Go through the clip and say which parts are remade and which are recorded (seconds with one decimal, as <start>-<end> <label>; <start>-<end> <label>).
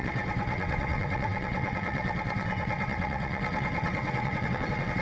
0.0-5.0 remade